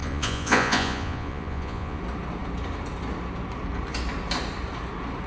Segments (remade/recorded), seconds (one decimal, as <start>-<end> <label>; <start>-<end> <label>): 0.0-2.0 remade; 2.0-5.3 recorded

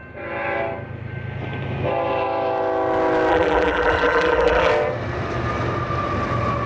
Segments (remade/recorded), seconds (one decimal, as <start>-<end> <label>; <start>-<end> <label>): 0.0-3.3 recorded; 3.3-4.7 remade; 4.7-6.7 recorded

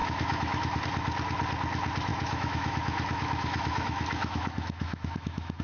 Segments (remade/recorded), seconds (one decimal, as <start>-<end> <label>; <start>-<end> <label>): 0.0-0.8 remade; 0.8-2.1 recorded; 2.1-5.6 remade

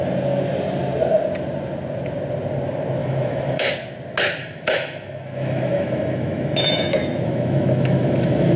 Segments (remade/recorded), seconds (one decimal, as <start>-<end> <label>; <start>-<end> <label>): 0.0-3.0 recorded; 3.0-3.7 remade; 3.7-4.4 recorded; 4.4-8.6 remade

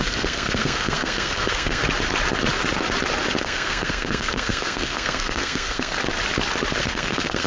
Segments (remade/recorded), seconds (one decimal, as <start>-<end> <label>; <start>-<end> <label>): 0.0-1.8 remade; 1.8-3.4 recorded; 3.4-6.0 remade; 6.0-6.8 recorded; 6.8-7.5 remade